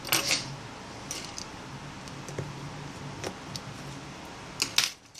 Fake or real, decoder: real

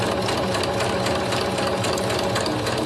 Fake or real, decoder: real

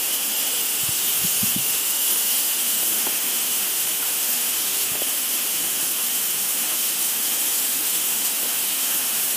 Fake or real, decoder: fake, autoencoder, DAC-VAE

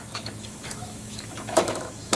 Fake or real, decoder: fake, autoencoder, DAC-VAE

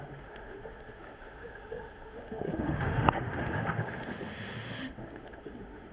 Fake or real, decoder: fake, autoencoder, DAC-VAE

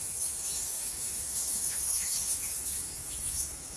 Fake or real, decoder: fake, autoencoder, DAC-VAE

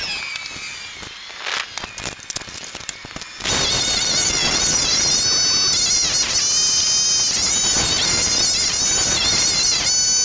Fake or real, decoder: real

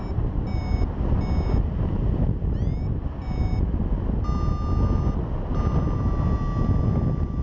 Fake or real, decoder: real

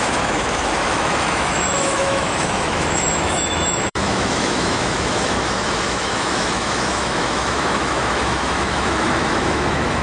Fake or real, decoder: fake, autoencoder, DAC-VAE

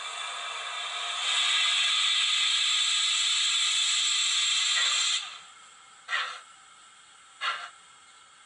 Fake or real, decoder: real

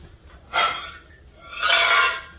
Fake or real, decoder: real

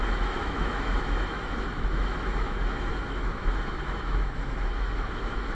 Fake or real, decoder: fake, autoencoder, DAC-VAE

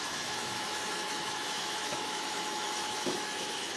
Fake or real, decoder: fake, autoencoder, DAC-VAE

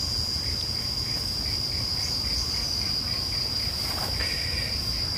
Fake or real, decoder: real